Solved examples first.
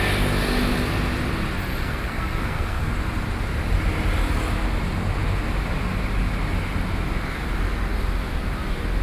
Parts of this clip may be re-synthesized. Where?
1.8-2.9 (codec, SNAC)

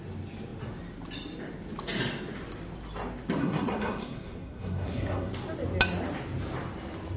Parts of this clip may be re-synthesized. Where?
3.4-5.3 (codec, SNAC)

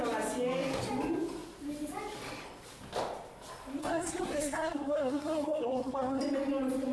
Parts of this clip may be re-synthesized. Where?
3.8-6.2 (codec, SNAC)

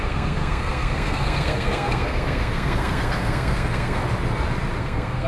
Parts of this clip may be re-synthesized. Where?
0.0-4.0 (codec, SNAC); 4.8-5.3

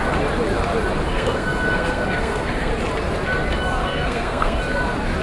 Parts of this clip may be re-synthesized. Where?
1.1-2.7 (codec, SNAC); 3.8-4.6

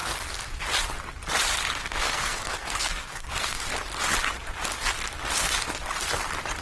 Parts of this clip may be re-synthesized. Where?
1.8-3.7 (codec, SNAC)

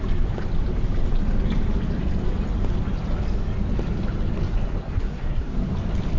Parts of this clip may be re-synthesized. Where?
4.8-5.7 (codec, SNAC)

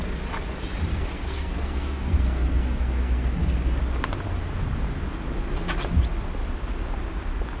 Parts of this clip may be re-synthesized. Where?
0.9-3.8 (codec, SNAC)